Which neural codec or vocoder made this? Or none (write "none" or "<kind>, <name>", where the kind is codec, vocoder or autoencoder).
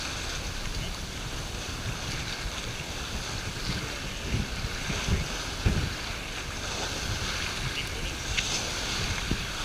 none